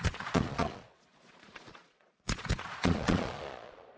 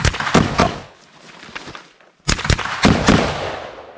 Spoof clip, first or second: first